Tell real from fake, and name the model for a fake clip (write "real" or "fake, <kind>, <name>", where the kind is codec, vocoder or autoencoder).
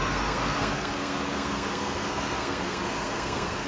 fake, codec, SNAC